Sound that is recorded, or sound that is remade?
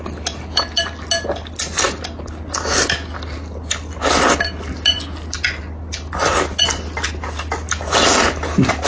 recorded